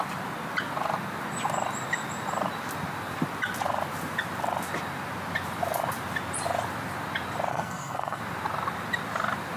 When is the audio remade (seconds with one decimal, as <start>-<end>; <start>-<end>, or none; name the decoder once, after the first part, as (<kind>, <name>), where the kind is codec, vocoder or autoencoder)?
7.5-8.2 (codec, SNAC)